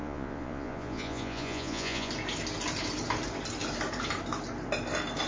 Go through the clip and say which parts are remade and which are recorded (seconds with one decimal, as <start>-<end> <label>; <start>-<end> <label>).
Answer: 0.0-2.1 remade; 2.1-5.3 recorded